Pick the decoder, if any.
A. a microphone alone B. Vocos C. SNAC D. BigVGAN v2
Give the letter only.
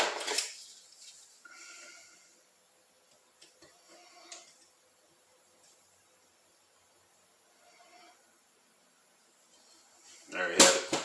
A